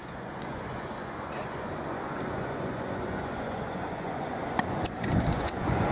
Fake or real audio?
fake